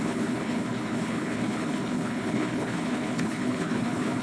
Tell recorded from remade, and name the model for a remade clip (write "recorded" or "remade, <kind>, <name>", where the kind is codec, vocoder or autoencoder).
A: remade, codec, HILCodec